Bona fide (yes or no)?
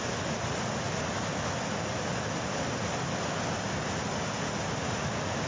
yes